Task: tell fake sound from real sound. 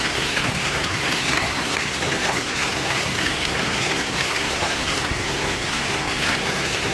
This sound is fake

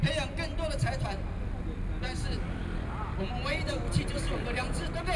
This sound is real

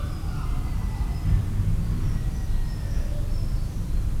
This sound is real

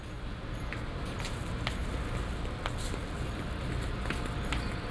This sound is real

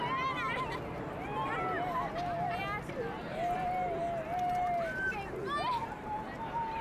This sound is real